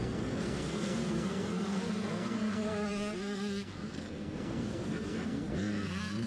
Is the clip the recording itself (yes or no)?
no